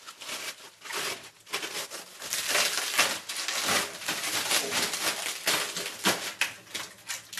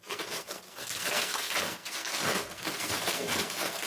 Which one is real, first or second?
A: first